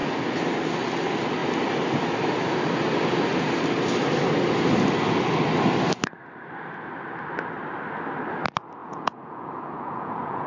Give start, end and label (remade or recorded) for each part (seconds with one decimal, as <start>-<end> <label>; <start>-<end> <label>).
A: 0.0-8.8 recorded; 8.8-10.5 remade

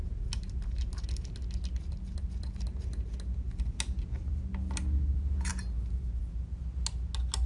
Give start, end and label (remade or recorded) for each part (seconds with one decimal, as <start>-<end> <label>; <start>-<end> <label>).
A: 0.0-7.5 recorded

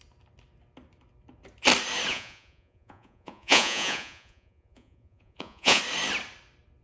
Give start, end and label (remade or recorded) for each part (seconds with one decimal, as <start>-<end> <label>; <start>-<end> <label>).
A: 0.0-2.1 recorded; 2.1-5.8 remade; 5.8-6.8 recorded

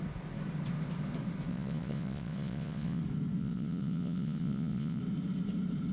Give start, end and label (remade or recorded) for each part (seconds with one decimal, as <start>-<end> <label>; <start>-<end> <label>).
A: 0.0-1.5 recorded; 1.5-3.0 remade; 3.0-3.4 recorded; 3.4-5.0 remade; 5.0-5.9 recorded

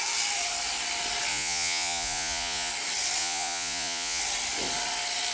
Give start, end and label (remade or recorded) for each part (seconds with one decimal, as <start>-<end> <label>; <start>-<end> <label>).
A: 0.0-1.3 recorded; 1.3-2.7 remade; 2.7-3.2 recorded; 3.2-4.2 remade; 4.2-5.3 recorded

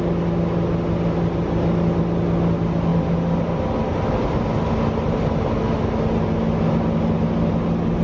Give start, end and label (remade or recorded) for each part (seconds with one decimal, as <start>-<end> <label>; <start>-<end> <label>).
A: 0.0-8.0 recorded